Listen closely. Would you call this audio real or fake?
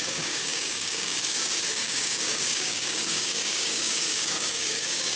fake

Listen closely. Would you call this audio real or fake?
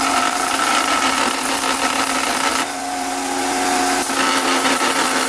real